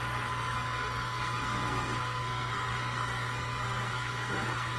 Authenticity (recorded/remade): remade